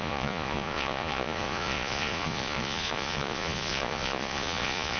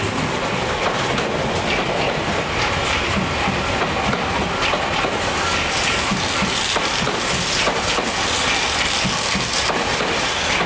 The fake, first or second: first